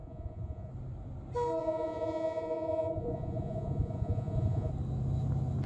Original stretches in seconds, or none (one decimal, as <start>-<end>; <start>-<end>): 0.7-1.6; 4.7-5.7